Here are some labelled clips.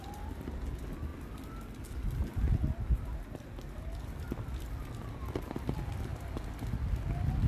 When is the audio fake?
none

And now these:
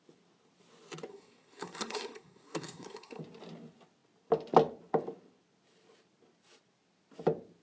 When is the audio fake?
1.1-3.2 (codec, SNAC)

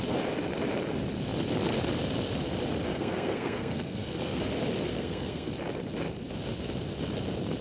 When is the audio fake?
2.9-4.4 (codec, SNAC); 4.9-5.5

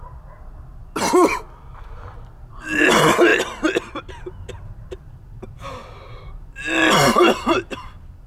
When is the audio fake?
none